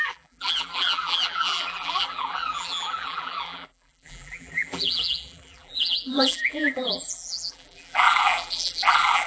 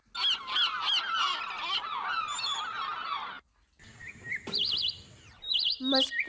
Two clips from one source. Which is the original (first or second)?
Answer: second